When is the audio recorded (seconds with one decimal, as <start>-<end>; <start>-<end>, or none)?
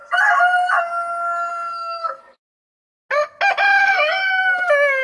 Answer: 0.0-1.5; 2.2-3.8; 4.3-5.0